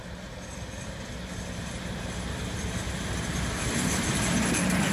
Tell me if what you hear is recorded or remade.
recorded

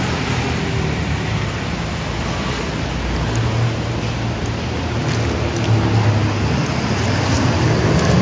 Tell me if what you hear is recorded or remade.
recorded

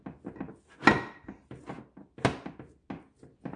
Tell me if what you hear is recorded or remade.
recorded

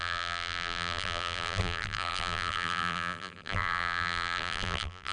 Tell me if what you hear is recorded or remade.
remade